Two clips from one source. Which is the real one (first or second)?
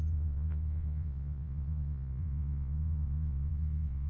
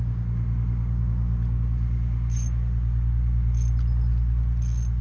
second